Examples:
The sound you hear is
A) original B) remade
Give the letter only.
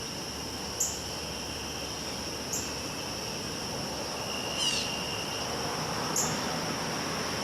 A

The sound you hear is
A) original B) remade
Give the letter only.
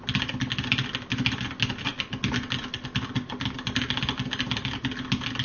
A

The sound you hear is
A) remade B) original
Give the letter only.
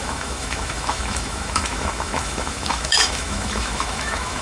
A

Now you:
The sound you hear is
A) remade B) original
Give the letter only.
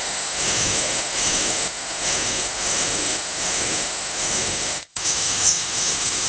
A